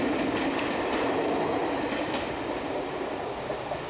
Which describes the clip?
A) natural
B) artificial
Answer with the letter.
A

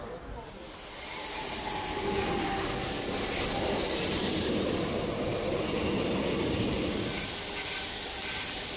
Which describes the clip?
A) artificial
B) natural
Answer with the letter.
B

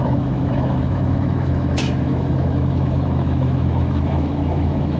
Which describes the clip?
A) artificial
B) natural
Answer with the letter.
A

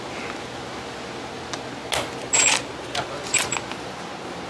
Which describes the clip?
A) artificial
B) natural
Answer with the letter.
B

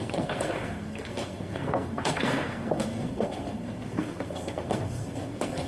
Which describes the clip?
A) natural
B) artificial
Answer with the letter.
B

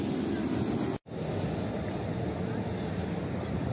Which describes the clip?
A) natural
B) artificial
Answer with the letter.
A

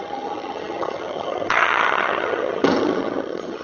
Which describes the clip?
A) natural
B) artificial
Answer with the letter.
B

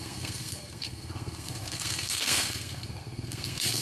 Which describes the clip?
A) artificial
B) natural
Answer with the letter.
A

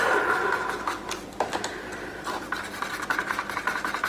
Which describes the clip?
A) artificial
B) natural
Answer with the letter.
B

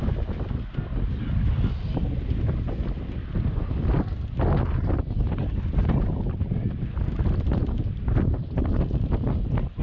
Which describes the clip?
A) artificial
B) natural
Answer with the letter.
B